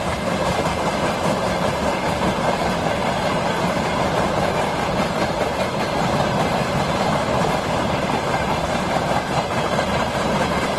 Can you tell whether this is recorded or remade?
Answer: remade